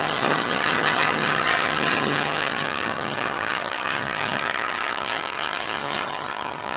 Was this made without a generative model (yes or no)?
no